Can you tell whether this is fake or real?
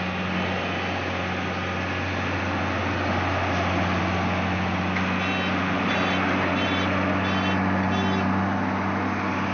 real